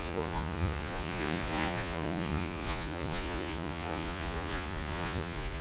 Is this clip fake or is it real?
fake